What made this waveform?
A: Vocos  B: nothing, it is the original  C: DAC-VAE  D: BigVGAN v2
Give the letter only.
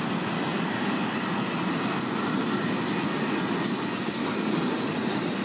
B